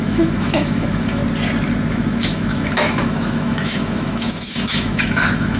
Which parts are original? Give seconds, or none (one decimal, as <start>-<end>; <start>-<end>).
1.2-1.9